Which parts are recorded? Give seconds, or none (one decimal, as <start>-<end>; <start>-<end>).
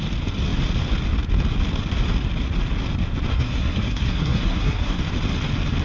0.0-3.3; 5.0-5.8